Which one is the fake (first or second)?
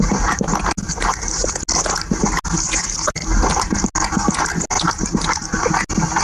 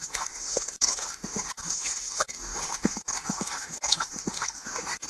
second